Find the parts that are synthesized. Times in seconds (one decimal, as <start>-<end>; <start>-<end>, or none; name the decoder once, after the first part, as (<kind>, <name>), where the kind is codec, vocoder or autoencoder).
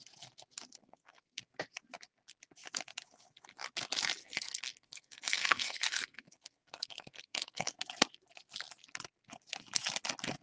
0.8-1.4 (codec, SNAC); 4.2-7.7